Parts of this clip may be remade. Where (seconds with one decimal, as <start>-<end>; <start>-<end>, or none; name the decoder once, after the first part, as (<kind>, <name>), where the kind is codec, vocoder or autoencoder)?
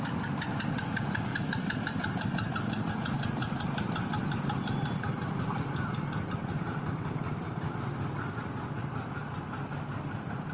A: 1.3-2.9 (vocoder, BigVGAN v2); 3.4-6.4